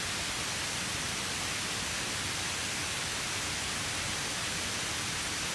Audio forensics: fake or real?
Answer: real